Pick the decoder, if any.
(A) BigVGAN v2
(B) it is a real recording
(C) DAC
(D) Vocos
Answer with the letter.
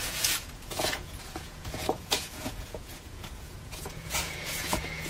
D